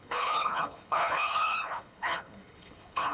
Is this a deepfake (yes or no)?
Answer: yes